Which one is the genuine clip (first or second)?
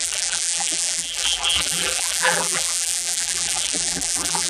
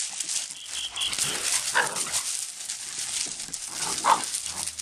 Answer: second